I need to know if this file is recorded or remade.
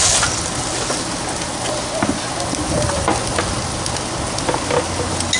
recorded